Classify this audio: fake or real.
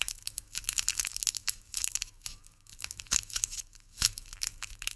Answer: fake